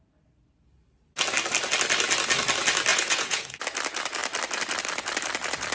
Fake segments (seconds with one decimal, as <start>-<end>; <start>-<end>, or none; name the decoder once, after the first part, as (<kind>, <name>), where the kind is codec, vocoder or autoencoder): 2.9-3.5 (vocoder, Vocos)

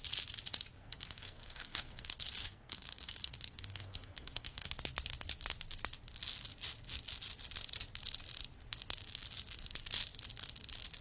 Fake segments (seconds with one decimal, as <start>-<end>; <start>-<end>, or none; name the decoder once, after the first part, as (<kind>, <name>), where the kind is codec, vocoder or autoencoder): 0.8-4.7 (codec, SNAC)